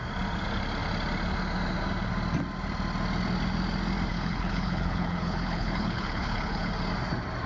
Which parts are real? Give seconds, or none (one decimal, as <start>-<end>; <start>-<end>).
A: 0.0-4.1; 6.7-7.5